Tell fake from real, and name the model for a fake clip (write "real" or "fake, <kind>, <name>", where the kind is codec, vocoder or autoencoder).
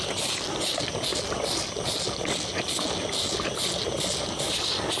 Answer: real